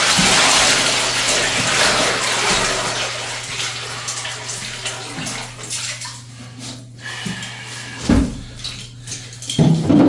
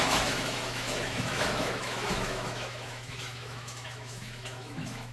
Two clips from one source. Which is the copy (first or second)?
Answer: second